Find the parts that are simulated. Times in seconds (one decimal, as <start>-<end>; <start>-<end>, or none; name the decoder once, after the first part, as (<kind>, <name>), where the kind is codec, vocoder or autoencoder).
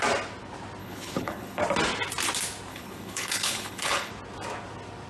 0.8-1.6 (codec, HILCodec); 2.7-4.1